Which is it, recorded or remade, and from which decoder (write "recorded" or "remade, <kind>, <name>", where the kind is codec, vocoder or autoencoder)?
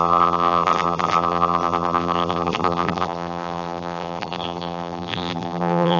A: remade, vocoder, BigVGAN v2